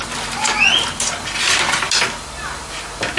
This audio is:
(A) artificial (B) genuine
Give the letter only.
B